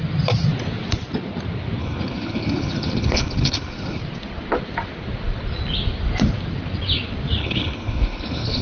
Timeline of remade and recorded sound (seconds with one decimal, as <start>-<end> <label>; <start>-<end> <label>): 0.0-1.8 recorded; 1.8-4.0 remade; 4.0-7.4 recorded; 7.4-8.6 remade